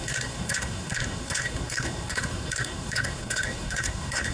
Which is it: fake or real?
fake